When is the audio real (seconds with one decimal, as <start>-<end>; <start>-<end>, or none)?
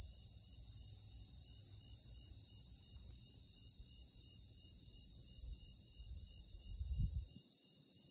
0.0-8.1